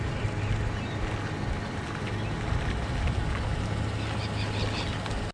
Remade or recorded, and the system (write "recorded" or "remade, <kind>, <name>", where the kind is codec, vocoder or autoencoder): recorded